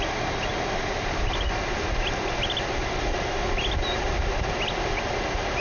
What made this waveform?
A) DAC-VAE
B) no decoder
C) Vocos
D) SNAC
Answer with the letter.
B